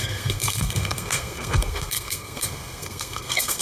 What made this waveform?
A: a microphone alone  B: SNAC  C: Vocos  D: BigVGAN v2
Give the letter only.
B